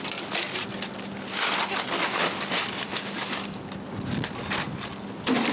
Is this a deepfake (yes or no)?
no